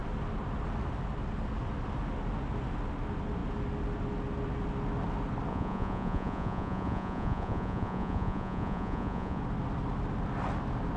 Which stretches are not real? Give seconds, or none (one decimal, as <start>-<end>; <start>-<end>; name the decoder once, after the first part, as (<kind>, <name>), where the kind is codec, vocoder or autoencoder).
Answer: 5.5-9.4 (vocoder, Vocos)